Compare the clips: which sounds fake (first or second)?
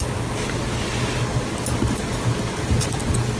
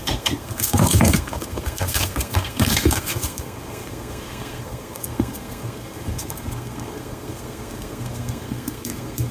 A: second